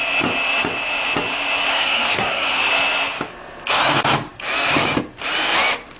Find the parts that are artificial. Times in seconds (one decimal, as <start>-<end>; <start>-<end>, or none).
1.7-2.7